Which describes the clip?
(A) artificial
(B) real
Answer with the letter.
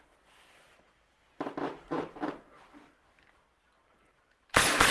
A